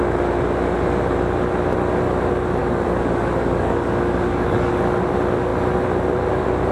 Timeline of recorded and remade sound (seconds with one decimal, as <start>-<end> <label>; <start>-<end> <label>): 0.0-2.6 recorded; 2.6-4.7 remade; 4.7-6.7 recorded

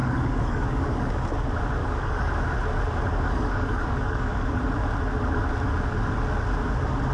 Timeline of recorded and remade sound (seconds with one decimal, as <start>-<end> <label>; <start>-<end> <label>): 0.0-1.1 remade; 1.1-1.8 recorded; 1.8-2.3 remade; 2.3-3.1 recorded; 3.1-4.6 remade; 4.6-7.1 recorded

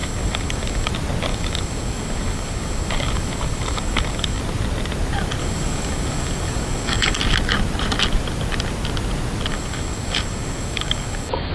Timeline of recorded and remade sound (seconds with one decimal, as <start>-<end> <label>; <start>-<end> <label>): 0.0-0.9 remade; 0.9-1.3 recorded; 1.3-4.4 remade; 4.4-5.4 recorded; 5.4-7.2 remade; 7.2-9.5 recorded; 9.5-11.5 remade

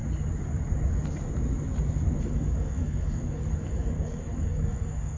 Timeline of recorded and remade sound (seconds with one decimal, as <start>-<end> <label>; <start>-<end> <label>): 0.0-2.2 recorded; 2.2-5.2 remade

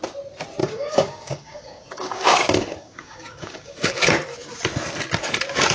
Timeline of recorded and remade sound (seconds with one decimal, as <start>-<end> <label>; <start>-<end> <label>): 0.0-0.6 recorded; 0.6-4.0 remade; 4.0-5.7 recorded